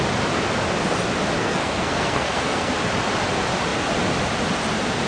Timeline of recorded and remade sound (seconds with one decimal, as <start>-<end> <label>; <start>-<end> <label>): 0.0-1.4 recorded; 1.4-2.7 remade; 2.7-5.1 recorded